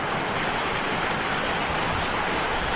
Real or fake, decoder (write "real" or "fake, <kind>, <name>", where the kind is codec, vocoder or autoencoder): real